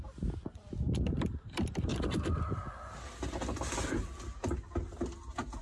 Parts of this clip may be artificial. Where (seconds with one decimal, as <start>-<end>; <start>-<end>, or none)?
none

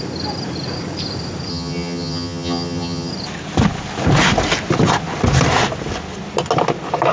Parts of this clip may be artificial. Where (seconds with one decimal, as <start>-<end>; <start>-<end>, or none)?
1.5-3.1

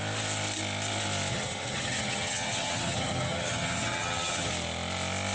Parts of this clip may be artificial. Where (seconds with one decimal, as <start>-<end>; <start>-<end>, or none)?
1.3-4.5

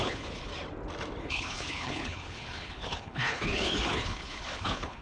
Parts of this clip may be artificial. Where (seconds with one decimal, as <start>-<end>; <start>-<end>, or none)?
0.0-0.5; 1.2-5.0